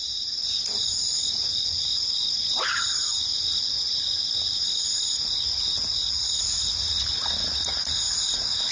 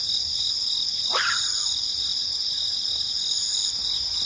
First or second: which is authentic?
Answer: second